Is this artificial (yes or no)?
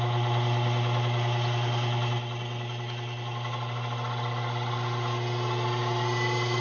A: no